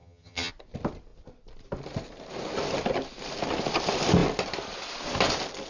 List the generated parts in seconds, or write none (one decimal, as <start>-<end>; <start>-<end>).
0.0-0.5